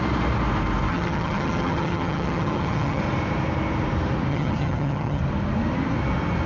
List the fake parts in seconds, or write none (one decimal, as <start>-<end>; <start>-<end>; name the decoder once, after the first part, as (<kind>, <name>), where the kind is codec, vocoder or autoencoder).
0.9-3.0 (vocoder, HiFi-GAN); 4.3-5.2